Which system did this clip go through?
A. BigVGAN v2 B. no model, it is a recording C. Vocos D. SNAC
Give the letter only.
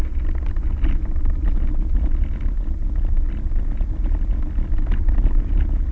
B